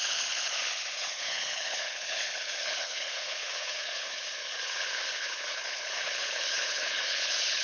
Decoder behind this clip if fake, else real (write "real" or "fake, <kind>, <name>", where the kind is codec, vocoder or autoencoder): fake, codec, HILCodec